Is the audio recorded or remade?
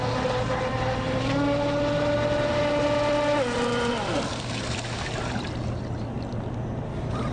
recorded